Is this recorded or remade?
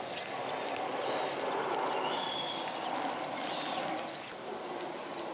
recorded